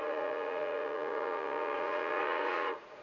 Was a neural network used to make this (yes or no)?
yes